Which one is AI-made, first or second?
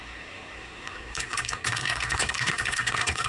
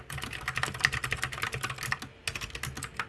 first